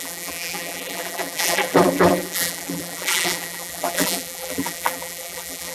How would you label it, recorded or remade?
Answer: remade